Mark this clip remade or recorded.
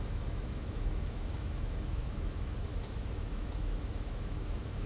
remade